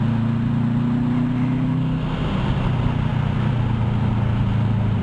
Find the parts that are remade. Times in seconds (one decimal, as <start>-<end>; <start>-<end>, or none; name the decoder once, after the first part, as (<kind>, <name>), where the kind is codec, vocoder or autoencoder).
none